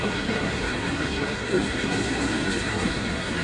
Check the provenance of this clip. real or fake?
fake